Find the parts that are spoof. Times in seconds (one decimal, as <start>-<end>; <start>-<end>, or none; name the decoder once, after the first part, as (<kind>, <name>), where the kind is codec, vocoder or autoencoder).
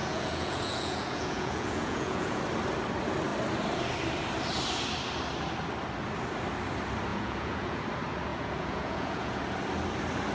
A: 0.0-2.4 (vocoder, Vocos); 7.1-7.8; 8.3-9.4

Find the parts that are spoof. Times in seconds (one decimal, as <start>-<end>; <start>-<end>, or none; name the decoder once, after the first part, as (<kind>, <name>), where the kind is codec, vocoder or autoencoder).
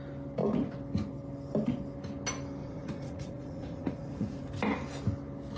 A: 2.6-4.5 (vocoder, Vocos)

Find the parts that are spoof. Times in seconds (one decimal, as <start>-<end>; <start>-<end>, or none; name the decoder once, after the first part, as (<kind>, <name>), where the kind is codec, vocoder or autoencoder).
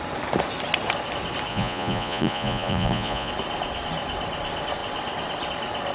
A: 1.5-3.3 (vocoder, Vocos)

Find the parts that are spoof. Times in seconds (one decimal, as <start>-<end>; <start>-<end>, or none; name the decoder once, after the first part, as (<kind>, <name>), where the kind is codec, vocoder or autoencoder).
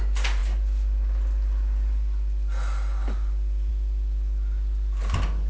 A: none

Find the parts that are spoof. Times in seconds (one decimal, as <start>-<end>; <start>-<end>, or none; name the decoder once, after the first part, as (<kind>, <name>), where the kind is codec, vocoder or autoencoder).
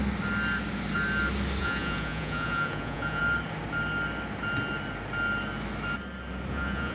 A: 1.6-3.2 (vocoder, Vocos); 6.5-6.9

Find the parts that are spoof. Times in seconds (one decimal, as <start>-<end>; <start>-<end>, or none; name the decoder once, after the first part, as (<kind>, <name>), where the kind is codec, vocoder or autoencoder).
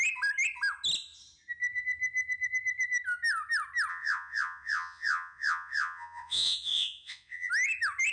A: 3.9-7.5 (vocoder, Vocos)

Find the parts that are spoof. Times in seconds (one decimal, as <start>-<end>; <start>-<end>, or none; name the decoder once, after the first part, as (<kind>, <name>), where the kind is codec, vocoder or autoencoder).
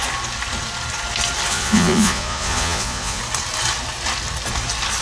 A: 1.5-3.2 (vocoder, Vocos)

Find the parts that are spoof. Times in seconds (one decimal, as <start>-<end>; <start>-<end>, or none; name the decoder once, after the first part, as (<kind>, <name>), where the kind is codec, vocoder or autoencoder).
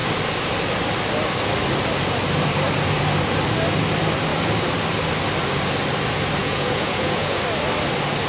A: 6.4-7.4 (vocoder, Vocos)